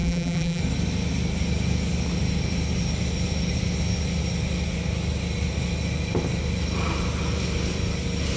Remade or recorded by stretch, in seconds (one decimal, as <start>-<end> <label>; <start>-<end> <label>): 0.0-0.6 remade; 0.6-8.4 recorded